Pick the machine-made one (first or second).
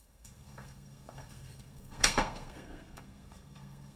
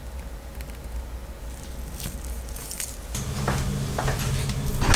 first